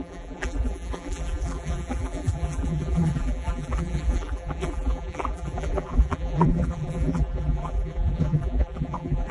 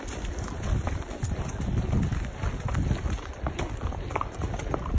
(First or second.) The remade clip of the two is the first